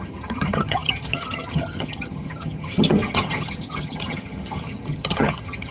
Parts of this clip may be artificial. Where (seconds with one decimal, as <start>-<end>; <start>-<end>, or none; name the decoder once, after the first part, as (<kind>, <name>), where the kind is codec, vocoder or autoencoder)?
0.0-5.7 (vocoder, HiFi-GAN)